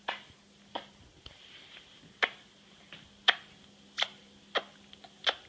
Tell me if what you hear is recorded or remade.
recorded